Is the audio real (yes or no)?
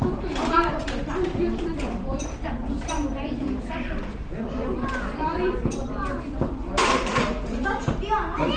no